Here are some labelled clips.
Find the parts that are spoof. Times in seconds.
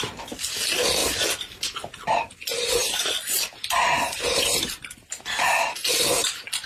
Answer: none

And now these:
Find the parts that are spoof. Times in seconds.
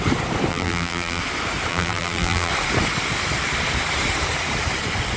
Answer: 0.5-1.2 (vocoder, BigVGAN v2); 1.7-2.5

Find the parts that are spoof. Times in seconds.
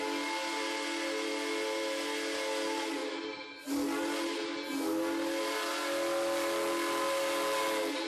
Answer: none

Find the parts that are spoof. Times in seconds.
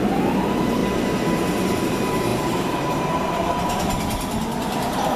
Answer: 2.3-3.5 (vocoder, BigVGAN v2)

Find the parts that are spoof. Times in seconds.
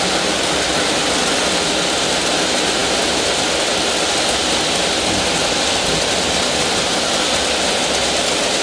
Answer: none